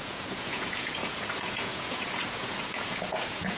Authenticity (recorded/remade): remade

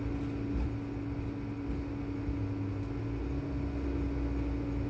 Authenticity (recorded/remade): recorded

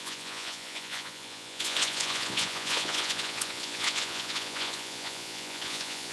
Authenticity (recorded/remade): remade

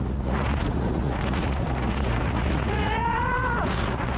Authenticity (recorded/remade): remade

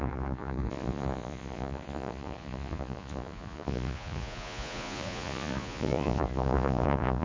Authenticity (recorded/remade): remade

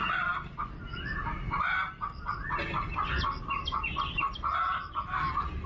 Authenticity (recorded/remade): recorded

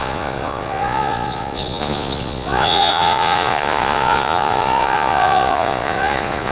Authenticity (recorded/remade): remade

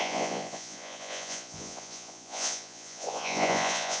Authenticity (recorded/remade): remade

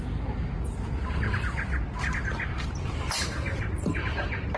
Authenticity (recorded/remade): recorded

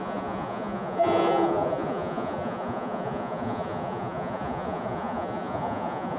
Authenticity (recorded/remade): remade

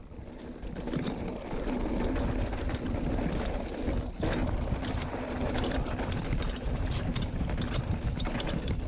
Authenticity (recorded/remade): recorded